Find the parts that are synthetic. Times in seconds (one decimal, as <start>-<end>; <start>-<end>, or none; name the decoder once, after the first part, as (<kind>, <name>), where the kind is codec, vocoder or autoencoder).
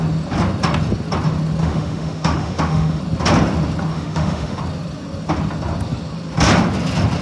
1.6-3.0 (autoencoder, DAC-VAE); 3.9-4.6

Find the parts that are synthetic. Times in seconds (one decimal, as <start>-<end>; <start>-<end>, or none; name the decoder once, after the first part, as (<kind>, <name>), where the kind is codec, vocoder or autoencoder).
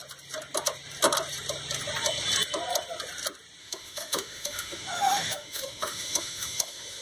3.6-7.0 (autoencoder, DAC-VAE)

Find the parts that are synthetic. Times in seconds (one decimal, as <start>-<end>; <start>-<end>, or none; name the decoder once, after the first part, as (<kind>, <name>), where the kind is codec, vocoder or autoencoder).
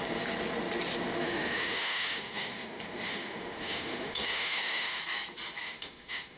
1.2-5.0 (autoencoder, DAC-VAE); 5.6-6.4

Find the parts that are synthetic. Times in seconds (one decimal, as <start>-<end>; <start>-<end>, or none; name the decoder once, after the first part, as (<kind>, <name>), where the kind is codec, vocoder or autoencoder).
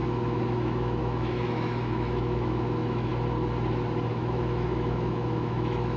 0.0-3.1 (autoencoder, DAC-VAE); 4.1-6.0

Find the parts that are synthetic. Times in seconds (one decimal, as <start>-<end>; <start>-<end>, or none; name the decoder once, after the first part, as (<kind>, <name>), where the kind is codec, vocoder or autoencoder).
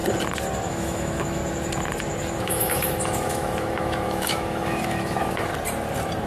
0.7-1.4 (autoencoder, DAC-VAE); 2.3-5.5